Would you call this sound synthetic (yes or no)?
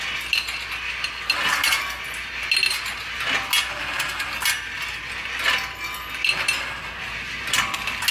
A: no